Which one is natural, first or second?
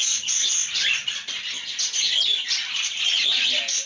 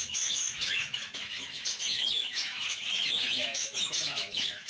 first